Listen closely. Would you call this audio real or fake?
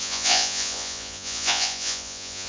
fake